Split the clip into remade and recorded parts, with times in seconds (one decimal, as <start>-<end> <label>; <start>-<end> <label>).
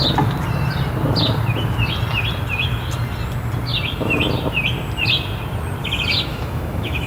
0.0-6.3 recorded; 6.3-7.1 remade